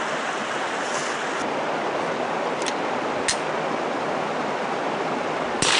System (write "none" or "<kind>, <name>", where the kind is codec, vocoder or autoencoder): none